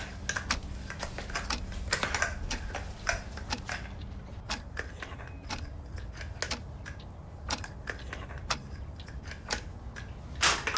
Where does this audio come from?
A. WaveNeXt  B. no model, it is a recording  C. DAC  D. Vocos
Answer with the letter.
B